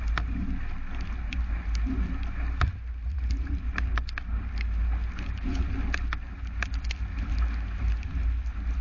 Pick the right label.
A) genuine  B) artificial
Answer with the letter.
A